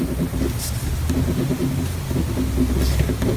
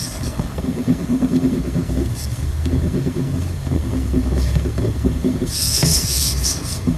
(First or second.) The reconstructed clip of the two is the second